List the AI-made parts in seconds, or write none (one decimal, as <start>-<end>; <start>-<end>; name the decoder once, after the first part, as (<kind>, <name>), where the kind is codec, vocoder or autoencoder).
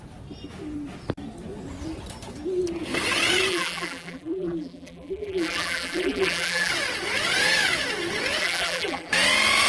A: 3.5-6.7 (vocoder, BigVGAN v2); 8.4-9.1